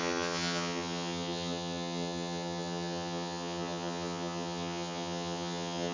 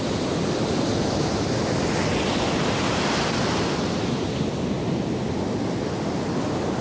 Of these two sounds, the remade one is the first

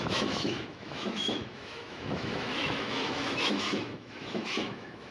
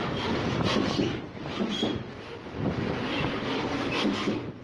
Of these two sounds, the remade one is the first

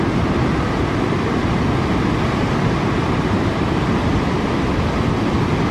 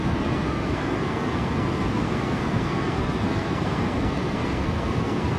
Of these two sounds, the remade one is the second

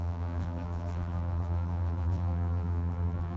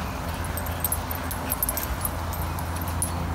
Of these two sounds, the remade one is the first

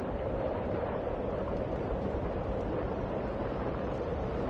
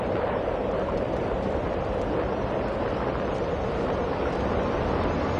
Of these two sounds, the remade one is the first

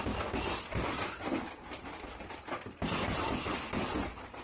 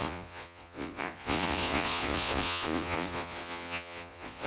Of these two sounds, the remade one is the second